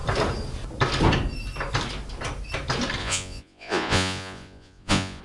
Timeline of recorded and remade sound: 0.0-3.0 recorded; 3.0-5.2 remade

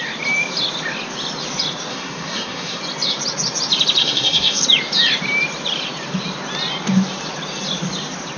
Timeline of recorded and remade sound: 0.0-1.9 recorded; 1.9-2.8 remade; 2.8-4.0 recorded; 4.0-4.6 remade; 4.6-8.4 recorded

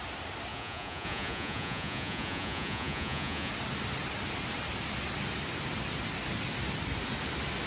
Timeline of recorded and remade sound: 0.0-0.5 recorded; 0.5-3.5 remade; 3.5-7.7 recorded

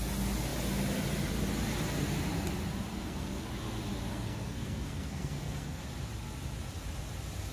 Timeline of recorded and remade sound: 0.0-2.9 recorded; 2.9-3.5 remade; 3.5-4.1 recorded; 4.1-5.8 remade; 5.8-7.5 recorded